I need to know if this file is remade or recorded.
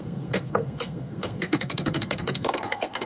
remade